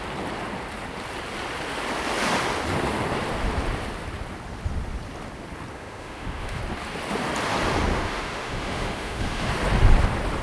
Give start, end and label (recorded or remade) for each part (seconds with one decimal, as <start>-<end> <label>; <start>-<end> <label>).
0.0-5.7 recorded; 5.7-6.6 remade; 6.6-7.9 recorded; 7.9-9.5 remade; 9.5-10.4 recorded